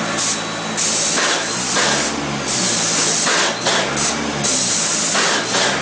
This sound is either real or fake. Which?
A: real